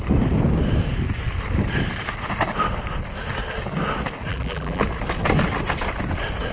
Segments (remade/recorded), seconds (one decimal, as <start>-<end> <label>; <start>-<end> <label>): 0.0-4.3 recorded; 4.3-4.8 remade; 4.8-6.5 recorded